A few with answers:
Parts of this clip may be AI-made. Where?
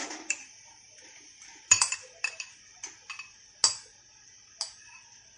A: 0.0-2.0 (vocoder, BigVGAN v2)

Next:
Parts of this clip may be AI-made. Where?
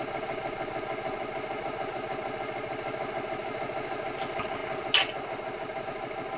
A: none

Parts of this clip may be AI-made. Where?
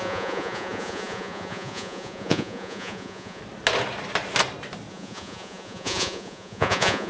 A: 0.0-3.4 (vocoder, Vocos); 4.9-7.1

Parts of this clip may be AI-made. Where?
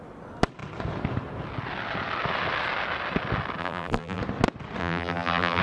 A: 3.6-4.2 (vocoder, BigVGAN v2); 4.8-5.6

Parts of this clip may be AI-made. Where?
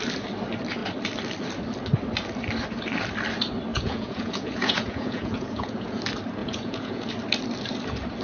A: 3.7-6.0 (vocoder, Vocos); 6.4-7.1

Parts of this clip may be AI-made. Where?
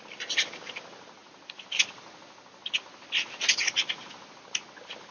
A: none